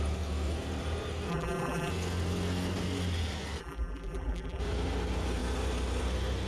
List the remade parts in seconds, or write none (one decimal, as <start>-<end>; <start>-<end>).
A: 1.3-1.9; 3.6-4.6